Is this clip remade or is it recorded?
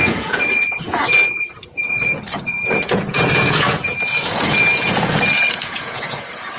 remade